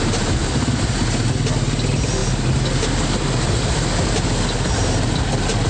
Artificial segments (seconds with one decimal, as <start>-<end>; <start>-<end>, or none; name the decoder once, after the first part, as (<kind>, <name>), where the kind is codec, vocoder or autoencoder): none